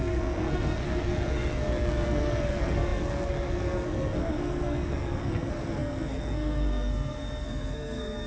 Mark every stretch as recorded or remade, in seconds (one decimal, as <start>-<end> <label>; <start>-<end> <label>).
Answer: 0.0-8.3 remade